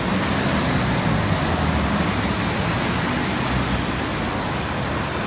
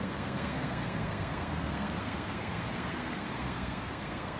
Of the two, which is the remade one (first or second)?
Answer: second